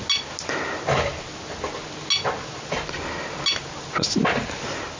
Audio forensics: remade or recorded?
recorded